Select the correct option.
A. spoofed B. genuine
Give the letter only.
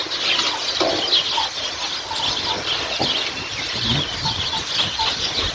B